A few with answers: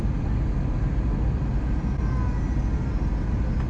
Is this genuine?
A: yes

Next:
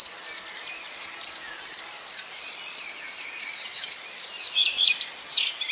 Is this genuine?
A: no